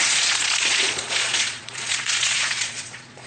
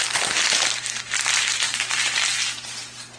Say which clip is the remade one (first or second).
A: first